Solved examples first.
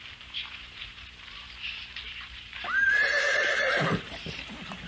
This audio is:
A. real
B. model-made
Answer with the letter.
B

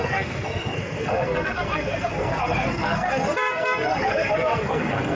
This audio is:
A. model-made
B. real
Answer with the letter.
A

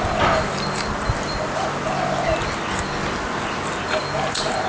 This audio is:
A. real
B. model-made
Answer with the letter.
A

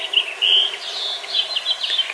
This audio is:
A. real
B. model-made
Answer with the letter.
A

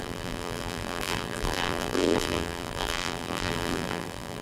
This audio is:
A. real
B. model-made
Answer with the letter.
B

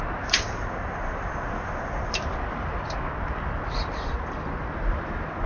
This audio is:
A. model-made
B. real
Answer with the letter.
B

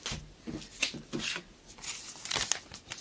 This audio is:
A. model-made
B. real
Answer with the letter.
B